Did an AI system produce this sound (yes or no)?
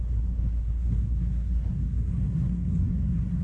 yes